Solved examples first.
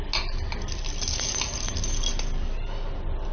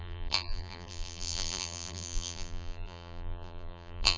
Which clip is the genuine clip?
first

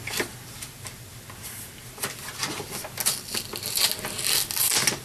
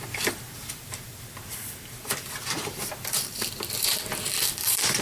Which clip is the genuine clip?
first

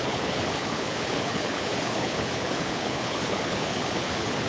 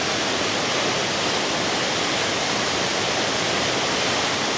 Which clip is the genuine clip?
second